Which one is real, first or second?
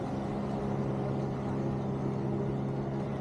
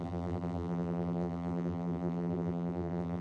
first